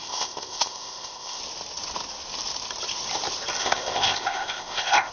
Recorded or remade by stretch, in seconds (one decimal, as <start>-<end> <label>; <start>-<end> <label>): 0.0-1.4 remade; 1.4-3.6 recorded; 3.6-5.1 remade